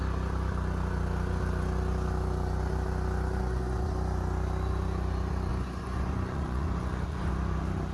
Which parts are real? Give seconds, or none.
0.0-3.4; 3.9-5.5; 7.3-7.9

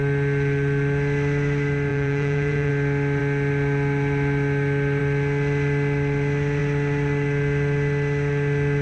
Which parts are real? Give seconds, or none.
0.0-1.9; 2.7-8.8

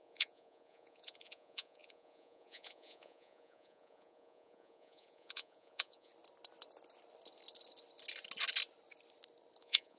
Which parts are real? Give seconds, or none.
6.1-9.6

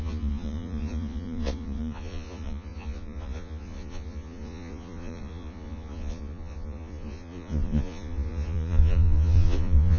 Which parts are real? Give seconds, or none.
none

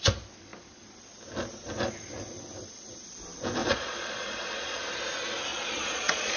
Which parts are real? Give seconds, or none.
0.0-3.6; 4.8-5.5

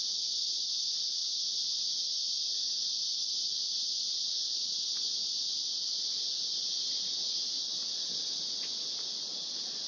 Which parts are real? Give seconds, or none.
0.0-9.9

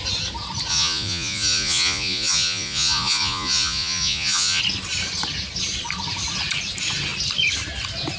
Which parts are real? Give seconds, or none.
0.0-0.7; 4.6-8.2

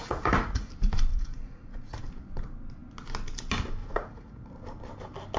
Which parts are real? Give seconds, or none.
0.7-1.1; 2.0-3.8; 4.5-5.4